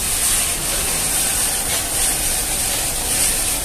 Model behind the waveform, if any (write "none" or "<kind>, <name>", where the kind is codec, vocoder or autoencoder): none